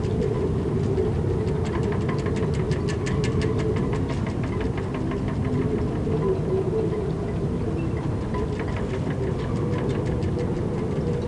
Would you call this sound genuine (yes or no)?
yes